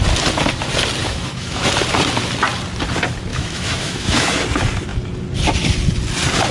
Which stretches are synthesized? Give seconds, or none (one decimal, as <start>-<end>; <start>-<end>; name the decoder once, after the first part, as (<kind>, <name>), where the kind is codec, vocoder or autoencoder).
1.0-1.7 (autoencoder, DAC-VAE); 3.3-4.3